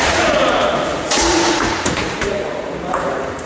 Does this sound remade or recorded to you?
remade